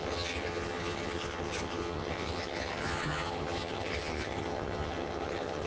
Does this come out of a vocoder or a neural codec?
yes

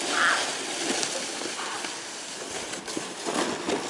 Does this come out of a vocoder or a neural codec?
no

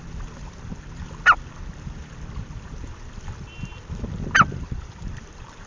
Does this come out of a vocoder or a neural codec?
yes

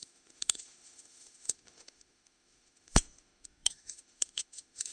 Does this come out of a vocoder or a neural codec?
yes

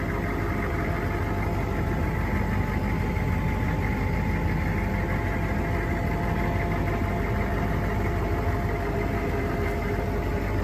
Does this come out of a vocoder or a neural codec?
no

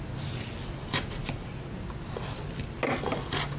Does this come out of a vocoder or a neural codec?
no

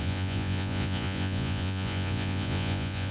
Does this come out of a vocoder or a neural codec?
yes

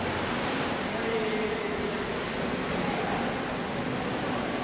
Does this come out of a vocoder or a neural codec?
no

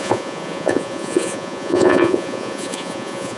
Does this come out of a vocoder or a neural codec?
yes